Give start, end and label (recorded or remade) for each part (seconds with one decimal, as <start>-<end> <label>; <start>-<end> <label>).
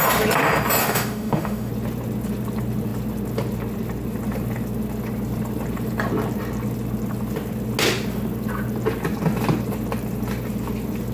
0.0-0.8 recorded; 0.8-1.7 remade; 1.7-11.1 recorded